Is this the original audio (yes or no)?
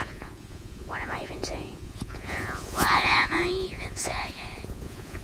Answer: no